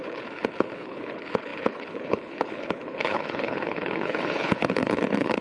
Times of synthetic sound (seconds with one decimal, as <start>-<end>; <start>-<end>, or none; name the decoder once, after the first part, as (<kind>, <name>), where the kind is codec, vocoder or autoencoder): 0.0-5.4 (codec, HILCodec)